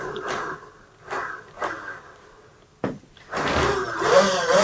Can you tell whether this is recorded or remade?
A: recorded